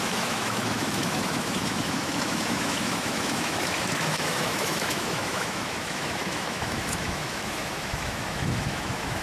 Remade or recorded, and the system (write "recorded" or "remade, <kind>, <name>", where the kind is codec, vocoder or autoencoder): remade, autoencoder, DAC-VAE